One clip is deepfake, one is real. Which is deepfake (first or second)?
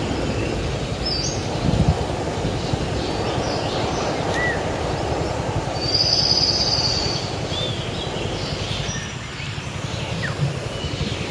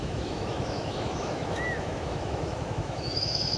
second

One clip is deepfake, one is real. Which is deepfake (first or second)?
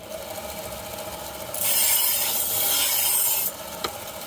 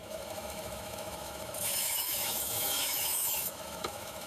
second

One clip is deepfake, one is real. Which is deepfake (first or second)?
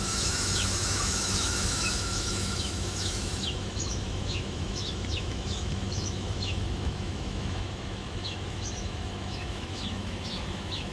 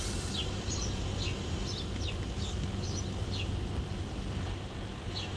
first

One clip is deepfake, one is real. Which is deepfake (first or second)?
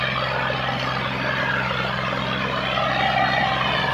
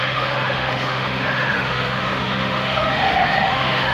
second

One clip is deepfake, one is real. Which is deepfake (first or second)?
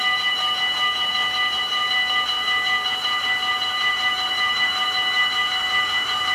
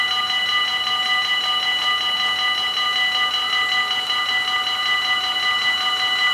first